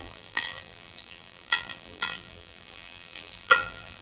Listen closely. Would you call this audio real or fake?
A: fake